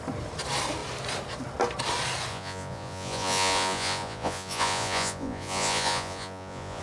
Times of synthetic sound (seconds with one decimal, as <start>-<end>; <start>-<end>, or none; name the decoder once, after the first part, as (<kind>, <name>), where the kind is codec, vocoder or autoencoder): 2.3-6.8 (vocoder, Vocos)